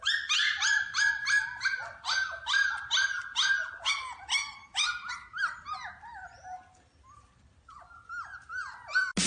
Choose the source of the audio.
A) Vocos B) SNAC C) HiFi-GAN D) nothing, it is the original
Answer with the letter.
D